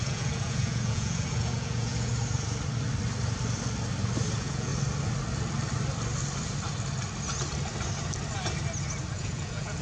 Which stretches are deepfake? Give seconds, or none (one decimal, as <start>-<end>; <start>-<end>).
0.0-2.1; 4.3-4.7; 9.1-9.8